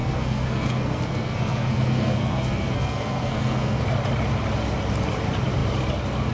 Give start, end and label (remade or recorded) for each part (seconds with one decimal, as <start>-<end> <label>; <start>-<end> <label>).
0.0-3.8 remade; 3.8-6.3 recorded